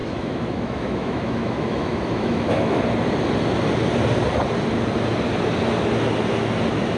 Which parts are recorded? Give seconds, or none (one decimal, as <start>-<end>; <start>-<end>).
2.8-7.0